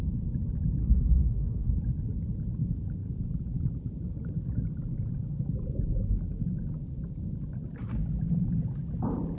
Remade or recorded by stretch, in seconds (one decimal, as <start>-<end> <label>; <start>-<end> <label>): 0.0-0.8 recorded; 0.8-1.7 remade; 1.7-9.4 recorded